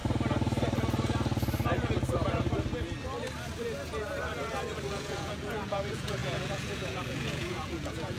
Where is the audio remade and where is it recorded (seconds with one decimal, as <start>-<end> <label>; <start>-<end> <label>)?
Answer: 0.0-4.9 recorded; 4.9-8.2 remade

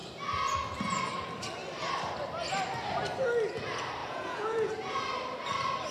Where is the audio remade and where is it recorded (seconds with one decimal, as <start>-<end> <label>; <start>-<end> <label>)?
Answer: 0.0-4.0 recorded; 4.0-4.7 remade; 4.7-5.9 recorded

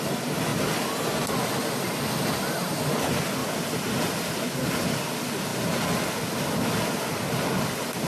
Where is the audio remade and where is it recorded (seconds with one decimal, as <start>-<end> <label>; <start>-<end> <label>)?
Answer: 0.0-8.1 recorded